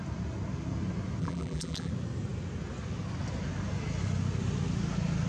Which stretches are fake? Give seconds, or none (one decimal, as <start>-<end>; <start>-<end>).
1.2-1.9